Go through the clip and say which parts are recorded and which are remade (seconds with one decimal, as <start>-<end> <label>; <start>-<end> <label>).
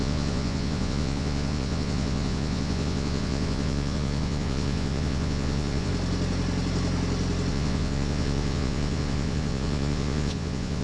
0.0-5.9 remade; 5.9-7.5 recorded; 7.5-10.8 remade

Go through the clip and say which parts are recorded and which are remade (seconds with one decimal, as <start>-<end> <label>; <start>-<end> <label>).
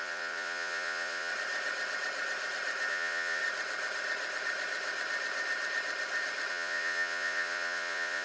0.0-1.3 remade; 1.3-2.9 recorded; 2.9-3.4 remade; 3.4-6.5 recorded; 6.5-8.2 remade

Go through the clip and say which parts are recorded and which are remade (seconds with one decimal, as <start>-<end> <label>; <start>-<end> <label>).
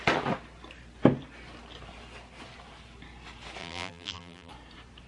0.0-3.6 recorded; 3.6-4.5 remade; 4.5-5.1 recorded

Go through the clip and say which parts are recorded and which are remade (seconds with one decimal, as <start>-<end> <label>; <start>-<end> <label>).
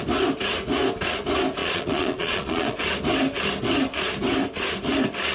0.0-1.6 recorded; 1.6-2.8 remade; 2.8-5.3 recorded